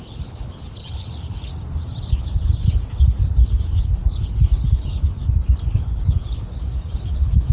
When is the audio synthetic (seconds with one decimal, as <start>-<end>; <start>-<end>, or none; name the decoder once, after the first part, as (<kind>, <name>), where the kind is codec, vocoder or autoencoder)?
0.0-1.5 (codec, HILCodec); 2.1-7.5